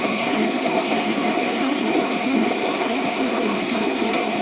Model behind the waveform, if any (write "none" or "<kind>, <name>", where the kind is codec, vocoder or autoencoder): codec, SNAC